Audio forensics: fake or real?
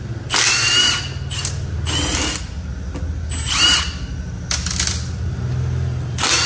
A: real